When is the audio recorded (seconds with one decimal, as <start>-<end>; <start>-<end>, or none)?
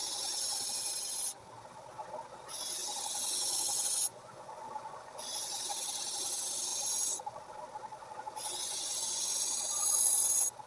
0.0-2.8; 5.6-6.7; 7.4-8.0; 9.5-10.7